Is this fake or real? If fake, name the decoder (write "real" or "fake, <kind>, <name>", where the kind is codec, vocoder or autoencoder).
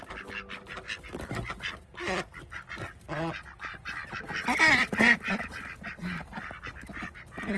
real